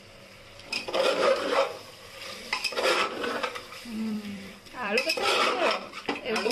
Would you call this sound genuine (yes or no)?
no